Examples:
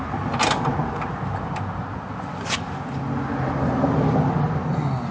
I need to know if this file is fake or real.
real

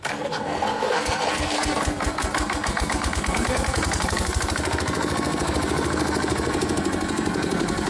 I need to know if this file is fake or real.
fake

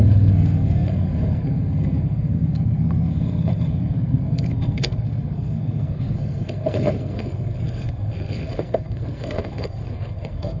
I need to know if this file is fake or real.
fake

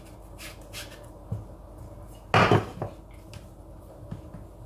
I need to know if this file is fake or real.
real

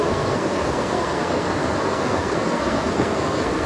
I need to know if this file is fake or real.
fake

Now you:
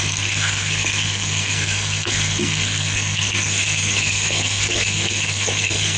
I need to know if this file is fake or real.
fake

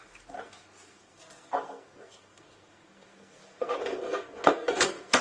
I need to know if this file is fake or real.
fake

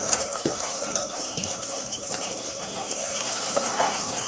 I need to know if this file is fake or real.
fake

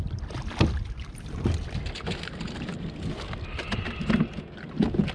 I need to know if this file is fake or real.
real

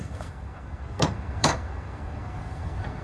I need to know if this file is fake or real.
fake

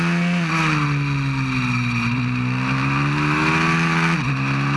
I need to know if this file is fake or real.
real